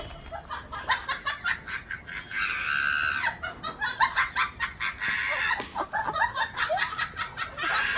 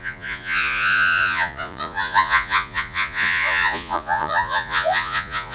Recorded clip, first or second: first